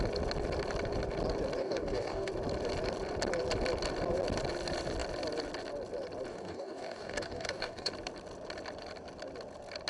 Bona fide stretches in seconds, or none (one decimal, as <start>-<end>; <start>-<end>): 0.0-1.6; 2.3-6.3; 7.9-9.9